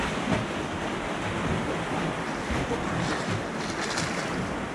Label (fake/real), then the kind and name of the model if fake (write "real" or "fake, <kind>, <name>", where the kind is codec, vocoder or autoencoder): real